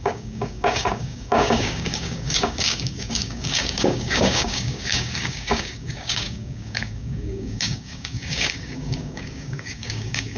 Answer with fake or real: fake